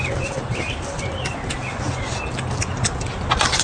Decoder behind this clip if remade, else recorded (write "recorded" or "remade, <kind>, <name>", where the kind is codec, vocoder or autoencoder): recorded